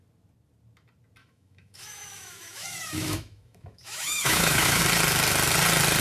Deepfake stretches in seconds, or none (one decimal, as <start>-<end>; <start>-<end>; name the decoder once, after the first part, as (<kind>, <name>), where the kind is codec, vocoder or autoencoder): 1.2-4.8 (autoencoder, DAC-VAE)